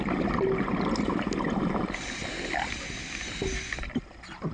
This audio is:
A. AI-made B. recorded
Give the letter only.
B